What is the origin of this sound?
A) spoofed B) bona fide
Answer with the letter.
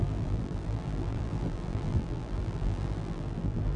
A